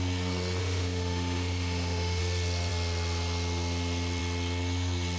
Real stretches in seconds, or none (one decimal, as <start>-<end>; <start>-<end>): 0.0-0.6; 2.2-5.2